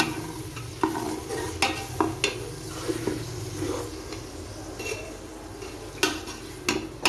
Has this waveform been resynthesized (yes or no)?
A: no